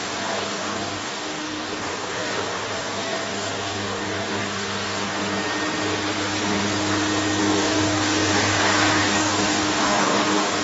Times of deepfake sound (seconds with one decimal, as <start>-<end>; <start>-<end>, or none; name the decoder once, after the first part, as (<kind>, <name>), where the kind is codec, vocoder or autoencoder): 0.0-5.2 (codec, DAC); 7.4-10.6